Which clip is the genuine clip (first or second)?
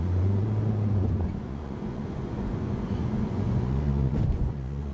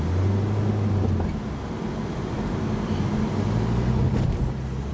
second